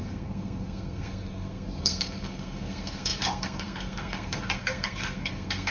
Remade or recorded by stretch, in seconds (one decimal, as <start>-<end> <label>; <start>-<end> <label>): 0.0-5.7 remade